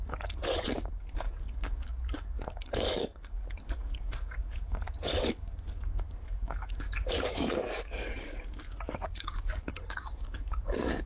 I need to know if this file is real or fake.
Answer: fake